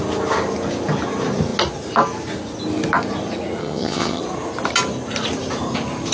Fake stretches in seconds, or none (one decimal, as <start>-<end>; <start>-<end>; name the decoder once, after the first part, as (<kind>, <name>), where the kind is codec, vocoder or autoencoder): 3.6-4.2 (vocoder, HiFi-GAN)